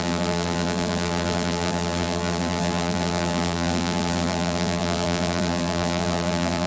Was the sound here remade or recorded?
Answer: remade